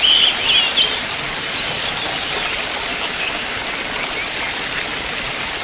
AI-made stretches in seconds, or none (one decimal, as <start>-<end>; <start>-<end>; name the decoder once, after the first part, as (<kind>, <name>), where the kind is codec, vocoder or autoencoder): 2.9-3.6 (codec, DAC)